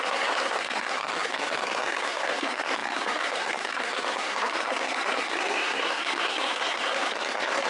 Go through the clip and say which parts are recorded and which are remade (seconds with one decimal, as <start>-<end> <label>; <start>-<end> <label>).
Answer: 0.0-7.7 remade